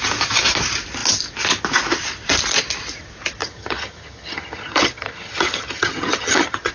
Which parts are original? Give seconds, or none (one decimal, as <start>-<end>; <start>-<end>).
0.0-3.4